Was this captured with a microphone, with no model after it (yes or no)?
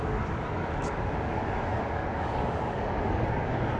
no